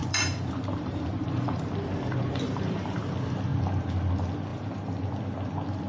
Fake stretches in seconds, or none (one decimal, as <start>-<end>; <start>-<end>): 0.0-3.0; 4.5-5.1